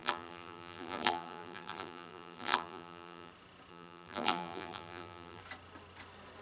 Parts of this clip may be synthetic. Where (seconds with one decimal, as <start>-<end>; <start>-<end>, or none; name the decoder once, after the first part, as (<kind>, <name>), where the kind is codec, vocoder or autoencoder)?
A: 0.0-3.3 (vocoder, BigVGAN v2); 3.7-5.4